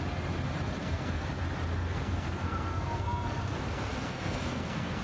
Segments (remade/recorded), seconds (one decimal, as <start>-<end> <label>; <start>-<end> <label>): 0.0-0.8 recorded; 0.8-1.4 remade; 1.4-1.8 recorded; 1.8-5.0 remade